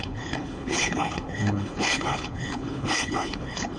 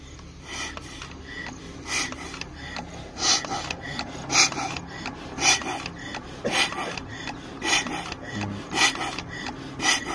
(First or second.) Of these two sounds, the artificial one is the first